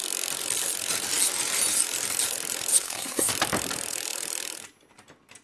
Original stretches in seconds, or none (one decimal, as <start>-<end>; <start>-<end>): 0.0-2.8; 3.3-5.4